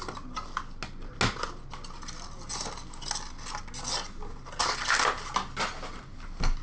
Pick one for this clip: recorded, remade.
recorded